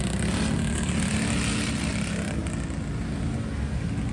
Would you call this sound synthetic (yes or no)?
no